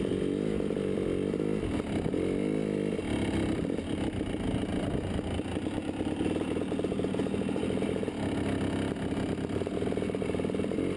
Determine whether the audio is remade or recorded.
recorded